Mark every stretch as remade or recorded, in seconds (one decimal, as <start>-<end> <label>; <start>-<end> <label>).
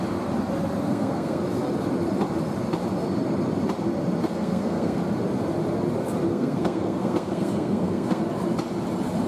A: 0.0-0.9 recorded; 0.9-1.4 remade; 1.4-4.2 recorded; 4.2-5.0 remade; 5.0-6.3 recorded; 6.3-8.2 remade; 8.2-9.3 recorded